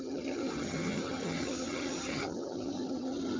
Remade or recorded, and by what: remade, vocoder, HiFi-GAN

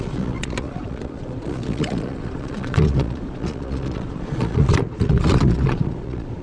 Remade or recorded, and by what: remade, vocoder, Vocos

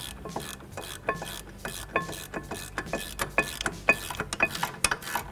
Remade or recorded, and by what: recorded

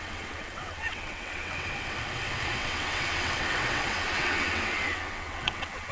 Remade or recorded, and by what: remade, vocoder, WaveNeXt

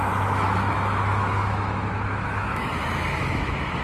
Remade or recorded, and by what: remade, autoencoder, DAC-VAE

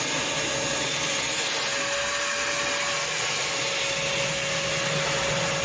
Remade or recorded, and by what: recorded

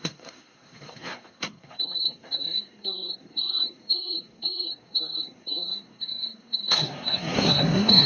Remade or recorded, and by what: remade, codec, SNAC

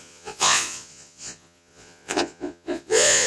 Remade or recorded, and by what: remade, vocoder, Vocos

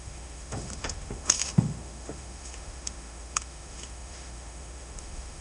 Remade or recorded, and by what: remade, autoencoder, DAC-VAE